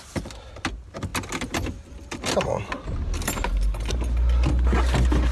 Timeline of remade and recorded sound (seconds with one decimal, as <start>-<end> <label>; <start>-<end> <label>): 0.0-5.3 recorded